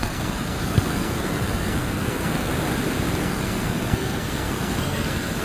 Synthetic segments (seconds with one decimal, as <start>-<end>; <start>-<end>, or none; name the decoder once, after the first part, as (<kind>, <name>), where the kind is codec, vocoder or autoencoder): 0.0-2.5 (codec, SNAC); 3.2-5.4